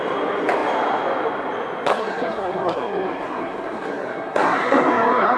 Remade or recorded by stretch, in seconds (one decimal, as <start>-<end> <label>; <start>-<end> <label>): 0.0-1.9 recorded; 1.9-5.4 remade